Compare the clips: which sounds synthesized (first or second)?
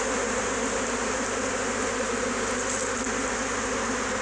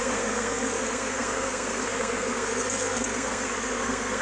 second